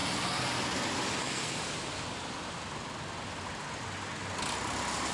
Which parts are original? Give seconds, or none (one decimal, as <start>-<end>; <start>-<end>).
0.0-1.2; 1.6-5.1